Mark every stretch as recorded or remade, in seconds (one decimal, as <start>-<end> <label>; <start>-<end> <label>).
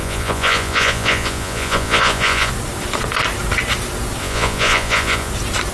0.0-2.5 remade; 2.5-4.2 recorded; 4.2-5.3 remade; 5.3-5.7 recorded